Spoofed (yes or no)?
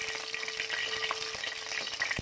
no